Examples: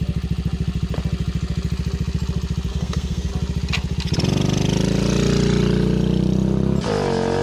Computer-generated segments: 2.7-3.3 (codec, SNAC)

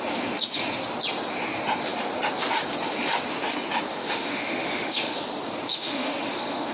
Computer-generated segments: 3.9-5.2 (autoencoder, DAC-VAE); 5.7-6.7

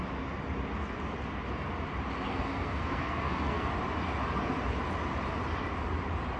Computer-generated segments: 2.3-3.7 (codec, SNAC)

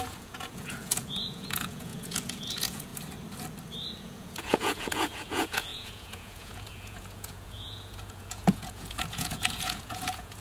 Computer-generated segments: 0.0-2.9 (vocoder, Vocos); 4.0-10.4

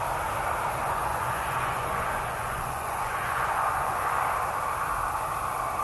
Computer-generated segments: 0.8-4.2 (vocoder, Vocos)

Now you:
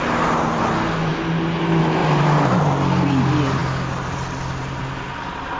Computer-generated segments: 2.0-2.6 (vocoder, BigVGAN v2)